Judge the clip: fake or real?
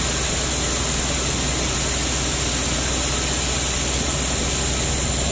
real